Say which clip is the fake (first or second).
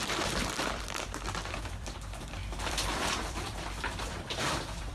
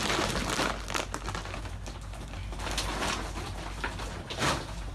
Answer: first